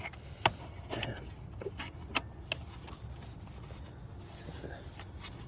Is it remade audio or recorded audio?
recorded